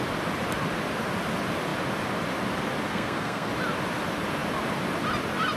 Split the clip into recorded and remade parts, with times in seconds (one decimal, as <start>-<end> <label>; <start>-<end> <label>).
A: 0.0-2.9 recorded; 2.9-3.5 remade; 3.5-5.6 recorded